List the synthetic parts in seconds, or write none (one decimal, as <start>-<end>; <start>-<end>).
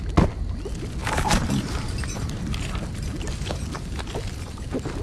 1.0-4.0